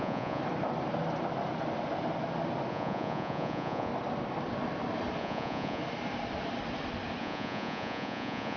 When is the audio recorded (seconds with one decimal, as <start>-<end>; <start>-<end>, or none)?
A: 0.4-2.7; 3.9-5.2; 5.8-7.2